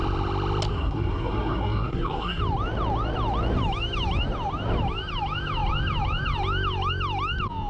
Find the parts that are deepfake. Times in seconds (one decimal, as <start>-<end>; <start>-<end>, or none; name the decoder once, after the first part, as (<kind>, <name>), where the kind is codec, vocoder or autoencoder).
0.7-2.4 (codec, SNAC)